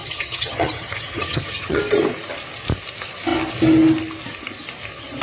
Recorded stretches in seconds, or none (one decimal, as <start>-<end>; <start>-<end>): 1.8-5.2